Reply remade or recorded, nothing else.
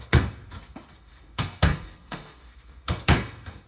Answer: remade